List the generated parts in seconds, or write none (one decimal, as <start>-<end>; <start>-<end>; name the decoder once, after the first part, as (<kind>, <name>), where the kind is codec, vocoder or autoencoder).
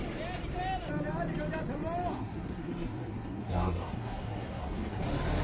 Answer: 2.1-5.0 (codec, SNAC)